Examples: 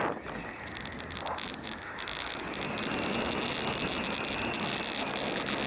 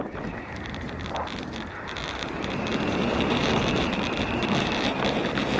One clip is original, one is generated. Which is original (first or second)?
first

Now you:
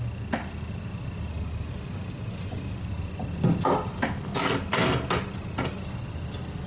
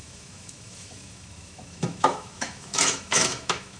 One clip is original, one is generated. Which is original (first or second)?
first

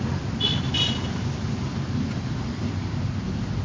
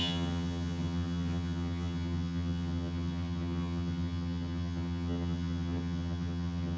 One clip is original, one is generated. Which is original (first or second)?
first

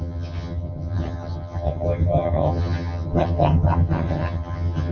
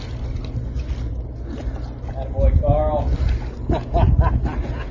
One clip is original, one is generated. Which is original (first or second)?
second